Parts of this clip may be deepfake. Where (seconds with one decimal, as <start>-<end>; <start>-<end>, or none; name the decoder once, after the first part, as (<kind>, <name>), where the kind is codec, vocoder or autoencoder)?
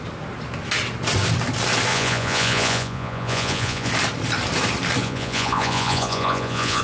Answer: 1.9-3.9 (vocoder, Vocos); 5.0-6.8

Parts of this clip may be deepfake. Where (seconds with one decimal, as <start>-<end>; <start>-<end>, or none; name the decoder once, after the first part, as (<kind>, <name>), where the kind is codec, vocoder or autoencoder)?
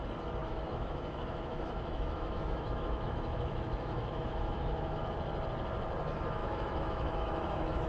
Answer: 0.4-5.1 (autoencoder, DAC-VAE); 6.4-7.9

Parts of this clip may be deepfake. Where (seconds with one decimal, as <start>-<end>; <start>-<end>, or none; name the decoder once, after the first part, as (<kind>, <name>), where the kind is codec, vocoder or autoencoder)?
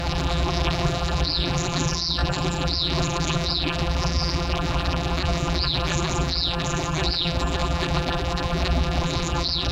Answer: 0.0-9.7 (vocoder, BigVGAN v2)